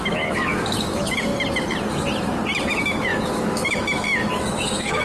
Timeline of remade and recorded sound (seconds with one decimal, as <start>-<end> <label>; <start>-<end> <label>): 0.0-1.3 remade; 1.3-2.7 recorded; 2.7-5.0 remade